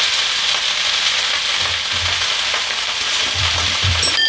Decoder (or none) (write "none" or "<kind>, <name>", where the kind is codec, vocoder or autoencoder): none